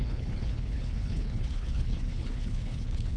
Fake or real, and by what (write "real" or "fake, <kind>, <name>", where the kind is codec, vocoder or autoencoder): fake, codec, HILCodec